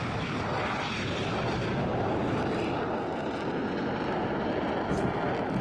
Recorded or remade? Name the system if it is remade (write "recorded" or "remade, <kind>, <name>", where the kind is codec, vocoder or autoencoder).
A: recorded